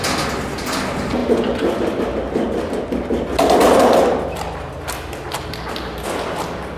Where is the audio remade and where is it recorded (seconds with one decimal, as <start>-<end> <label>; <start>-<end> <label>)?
0.0-6.8 recorded